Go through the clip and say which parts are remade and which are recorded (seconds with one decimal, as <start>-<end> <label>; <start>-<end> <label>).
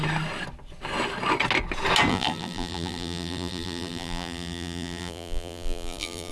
0.0-2.1 recorded; 2.1-6.3 remade